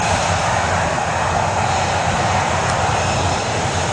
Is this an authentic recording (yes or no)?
yes